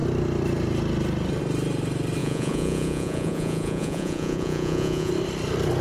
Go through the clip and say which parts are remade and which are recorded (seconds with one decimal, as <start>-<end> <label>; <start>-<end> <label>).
0.0-2.2 recorded; 2.2-5.1 remade; 5.1-5.8 recorded